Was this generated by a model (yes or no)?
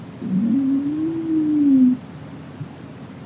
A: no